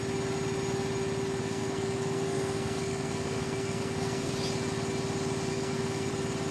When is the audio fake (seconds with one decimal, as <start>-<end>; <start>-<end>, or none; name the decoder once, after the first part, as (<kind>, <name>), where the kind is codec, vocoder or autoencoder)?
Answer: 1.4-4.3 (codec, SNAC); 5.5-6.1